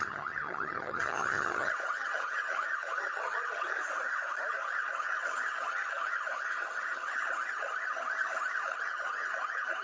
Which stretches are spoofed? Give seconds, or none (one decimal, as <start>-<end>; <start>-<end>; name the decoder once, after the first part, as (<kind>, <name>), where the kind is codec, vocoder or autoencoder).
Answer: 0.0-3.8 (vocoder, HiFi-GAN); 4.5-9.8